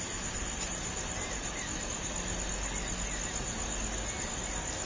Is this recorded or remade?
recorded